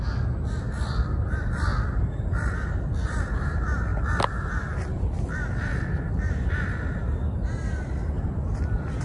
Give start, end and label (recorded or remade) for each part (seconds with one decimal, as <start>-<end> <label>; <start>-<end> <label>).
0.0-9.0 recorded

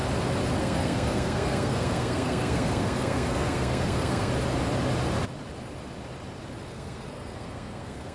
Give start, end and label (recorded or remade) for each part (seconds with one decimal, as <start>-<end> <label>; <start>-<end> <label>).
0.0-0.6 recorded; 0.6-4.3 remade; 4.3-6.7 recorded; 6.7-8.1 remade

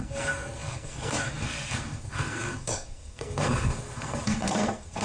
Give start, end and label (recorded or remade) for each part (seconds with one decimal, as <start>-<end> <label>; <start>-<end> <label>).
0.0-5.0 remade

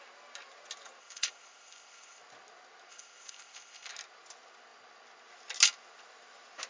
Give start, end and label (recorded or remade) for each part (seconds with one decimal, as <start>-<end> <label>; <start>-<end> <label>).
0.0-1.0 recorded; 1.0-2.2 remade; 2.2-2.9 recorded; 2.9-3.9 remade; 3.9-6.7 recorded